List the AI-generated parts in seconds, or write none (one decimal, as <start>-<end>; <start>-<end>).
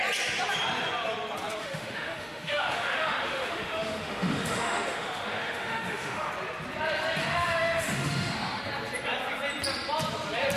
1.6-6.3; 7.2-8.6